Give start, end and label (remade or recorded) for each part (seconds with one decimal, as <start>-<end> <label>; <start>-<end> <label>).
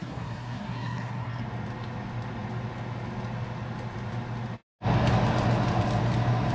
0.0-1.4 remade; 1.4-6.5 recorded